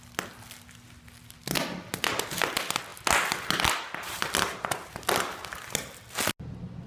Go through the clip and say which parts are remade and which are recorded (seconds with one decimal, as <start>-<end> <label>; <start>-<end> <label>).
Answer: 0.0-6.9 recorded